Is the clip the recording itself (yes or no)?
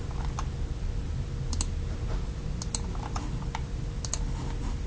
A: yes